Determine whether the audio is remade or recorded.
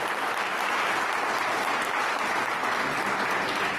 recorded